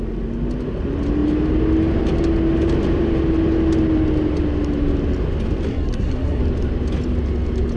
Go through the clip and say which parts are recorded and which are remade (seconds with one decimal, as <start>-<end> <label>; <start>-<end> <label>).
0.0-5.7 recorded; 5.7-6.4 remade; 6.4-7.8 recorded